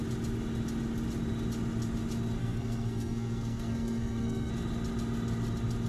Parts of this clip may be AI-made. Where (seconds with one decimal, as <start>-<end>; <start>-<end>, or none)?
2.4-4.5